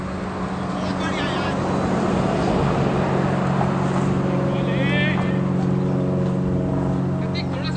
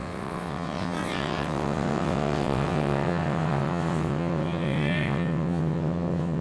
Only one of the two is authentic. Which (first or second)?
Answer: first